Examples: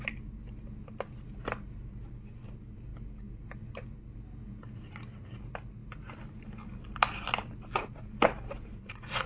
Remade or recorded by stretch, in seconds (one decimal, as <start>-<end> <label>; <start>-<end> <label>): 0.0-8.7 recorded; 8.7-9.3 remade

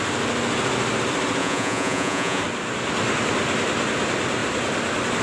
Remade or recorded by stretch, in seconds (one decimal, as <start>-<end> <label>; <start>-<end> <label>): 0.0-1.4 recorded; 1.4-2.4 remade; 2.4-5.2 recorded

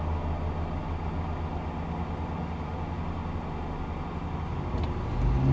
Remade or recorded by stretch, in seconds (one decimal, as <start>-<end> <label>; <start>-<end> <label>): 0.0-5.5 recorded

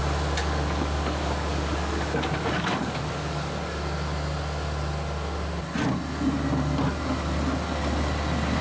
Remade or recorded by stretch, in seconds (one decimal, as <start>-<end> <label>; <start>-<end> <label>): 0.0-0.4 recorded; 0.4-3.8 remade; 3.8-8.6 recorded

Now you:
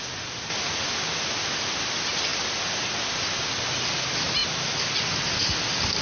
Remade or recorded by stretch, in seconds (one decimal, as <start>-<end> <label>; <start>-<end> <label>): 0.0-6.0 recorded